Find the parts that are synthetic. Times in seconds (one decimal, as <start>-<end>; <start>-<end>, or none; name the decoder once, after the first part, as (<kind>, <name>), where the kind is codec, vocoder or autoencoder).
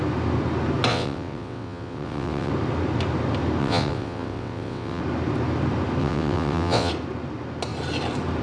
0.9-2.5 (vocoder, WaveNeXt); 3.6-5.0; 6.0-6.9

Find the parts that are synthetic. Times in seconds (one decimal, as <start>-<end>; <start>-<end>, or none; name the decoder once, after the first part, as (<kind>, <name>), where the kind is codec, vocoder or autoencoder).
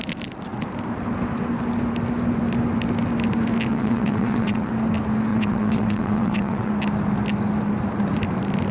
3.7-4.7 (vocoder, WaveNeXt); 5.3-6.7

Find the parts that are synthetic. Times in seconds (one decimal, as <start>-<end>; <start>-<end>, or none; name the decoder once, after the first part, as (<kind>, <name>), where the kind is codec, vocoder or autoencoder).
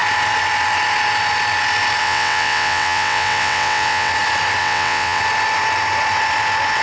2.0-4.1 (vocoder, WaveNeXt); 4.6-5.2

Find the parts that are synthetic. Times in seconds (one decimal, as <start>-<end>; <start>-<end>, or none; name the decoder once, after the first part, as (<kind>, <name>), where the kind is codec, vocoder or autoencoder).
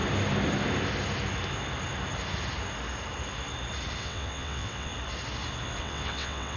4.0-4.9 (vocoder, WaveNeXt); 5.8-6.6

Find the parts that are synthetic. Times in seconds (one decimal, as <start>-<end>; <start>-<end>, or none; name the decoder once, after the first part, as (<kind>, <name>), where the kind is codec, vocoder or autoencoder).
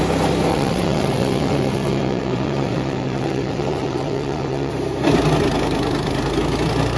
0.5-4.7 (vocoder, WaveNeXt)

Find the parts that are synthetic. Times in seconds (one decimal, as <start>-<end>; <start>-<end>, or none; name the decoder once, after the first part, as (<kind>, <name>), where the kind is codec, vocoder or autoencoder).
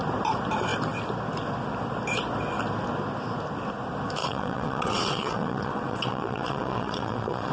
4.2-7.5 (vocoder, WaveNeXt)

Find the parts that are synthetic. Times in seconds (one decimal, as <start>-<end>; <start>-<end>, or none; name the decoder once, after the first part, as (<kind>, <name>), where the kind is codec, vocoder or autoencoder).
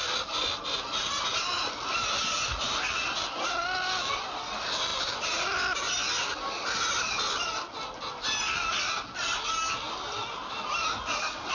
none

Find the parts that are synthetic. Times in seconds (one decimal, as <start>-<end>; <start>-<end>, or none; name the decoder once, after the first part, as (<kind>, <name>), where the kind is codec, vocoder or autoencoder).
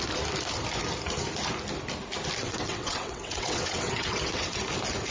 2.4-4.6 (vocoder, WaveNeXt)